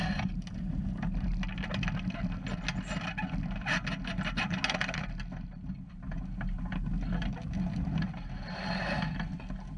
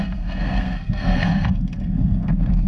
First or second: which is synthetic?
second